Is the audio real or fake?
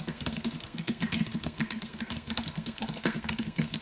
fake